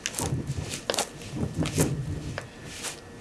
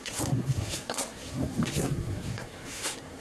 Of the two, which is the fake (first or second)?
second